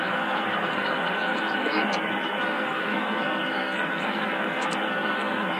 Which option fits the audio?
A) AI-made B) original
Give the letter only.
A